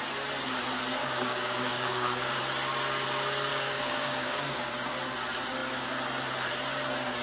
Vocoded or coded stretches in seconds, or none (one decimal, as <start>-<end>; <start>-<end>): 1.0-2.4; 3.5-4.7